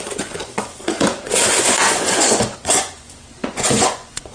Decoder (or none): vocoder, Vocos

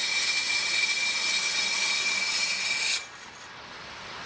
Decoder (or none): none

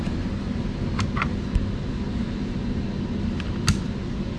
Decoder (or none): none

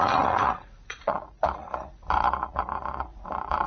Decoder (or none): vocoder, Vocos